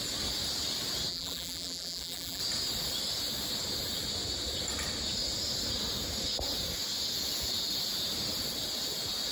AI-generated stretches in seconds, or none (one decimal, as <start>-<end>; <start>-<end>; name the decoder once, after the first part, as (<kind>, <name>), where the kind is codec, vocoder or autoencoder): 1.1-2.4 (vocoder, BigVGAN v2)